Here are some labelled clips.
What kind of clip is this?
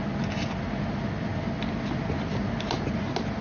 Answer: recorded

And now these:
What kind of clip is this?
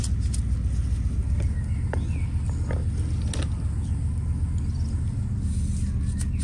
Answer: recorded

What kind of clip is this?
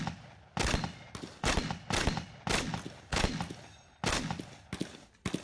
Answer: recorded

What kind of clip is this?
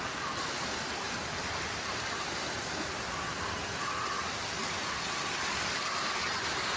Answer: remade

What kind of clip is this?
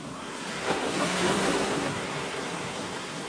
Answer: remade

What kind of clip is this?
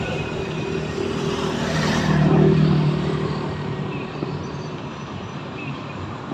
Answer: remade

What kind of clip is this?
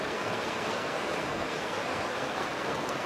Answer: remade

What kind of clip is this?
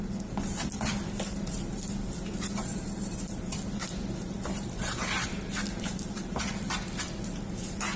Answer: recorded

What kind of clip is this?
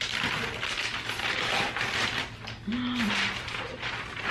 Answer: recorded